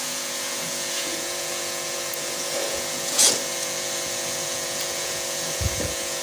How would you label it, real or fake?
fake